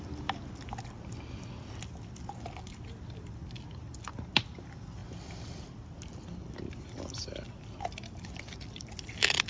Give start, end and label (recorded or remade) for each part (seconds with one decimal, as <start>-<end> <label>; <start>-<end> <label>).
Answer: 0.0-9.5 recorded